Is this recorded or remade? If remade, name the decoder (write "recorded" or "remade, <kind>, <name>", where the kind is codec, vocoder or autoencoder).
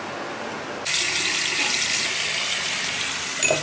recorded